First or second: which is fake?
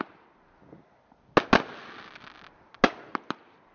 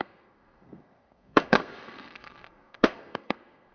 second